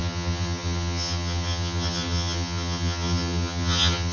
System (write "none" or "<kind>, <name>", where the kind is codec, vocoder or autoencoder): vocoder, HiFi-GAN